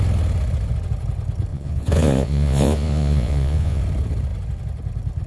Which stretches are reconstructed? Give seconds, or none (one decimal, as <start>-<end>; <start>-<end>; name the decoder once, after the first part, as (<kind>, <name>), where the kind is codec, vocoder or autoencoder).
1.5-3.8 (vocoder, Vocos)